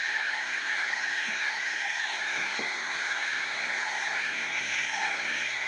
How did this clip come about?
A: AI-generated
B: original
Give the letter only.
A